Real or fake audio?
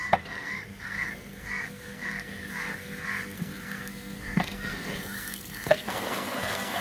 fake